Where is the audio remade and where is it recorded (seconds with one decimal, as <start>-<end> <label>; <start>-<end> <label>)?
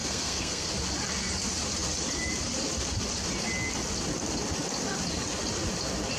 0.0-0.7 remade; 0.7-6.2 recorded